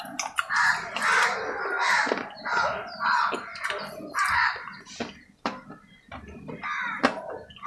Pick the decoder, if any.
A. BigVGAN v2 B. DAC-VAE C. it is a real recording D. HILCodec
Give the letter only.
C